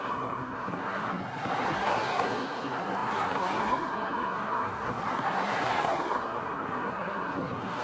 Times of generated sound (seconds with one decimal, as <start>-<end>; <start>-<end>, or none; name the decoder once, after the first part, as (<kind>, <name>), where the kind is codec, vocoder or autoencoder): 0.0-7.8 (codec, SNAC)